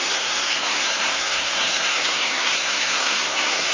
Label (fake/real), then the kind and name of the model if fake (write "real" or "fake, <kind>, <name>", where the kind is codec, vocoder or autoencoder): fake, codec, SNAC